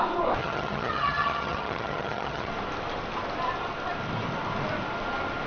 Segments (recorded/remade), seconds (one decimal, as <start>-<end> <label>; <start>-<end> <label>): 0.0-0.4 recorded; 0.4-2.5 remade; 2.5-5.5 recorded